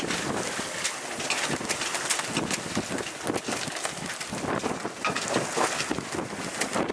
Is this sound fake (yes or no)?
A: no